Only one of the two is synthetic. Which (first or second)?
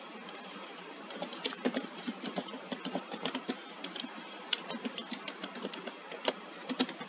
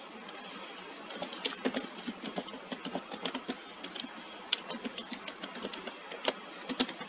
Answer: first